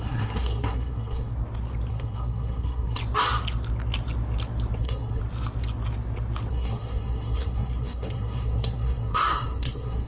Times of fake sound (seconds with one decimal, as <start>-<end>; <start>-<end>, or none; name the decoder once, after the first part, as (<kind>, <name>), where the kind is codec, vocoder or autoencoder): 0.0-1.3 (codec, SNAC); 1.9-3.0; 4.8-5.2; 6.5-10.1